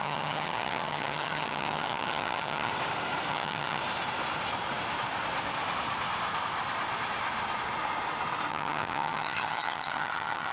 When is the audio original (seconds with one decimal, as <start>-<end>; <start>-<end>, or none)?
2.7-3.3; 3.8-8.5